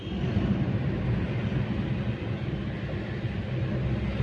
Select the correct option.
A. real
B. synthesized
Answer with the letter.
A